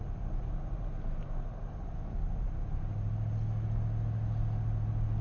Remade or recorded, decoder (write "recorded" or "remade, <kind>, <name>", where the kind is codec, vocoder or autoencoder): recorded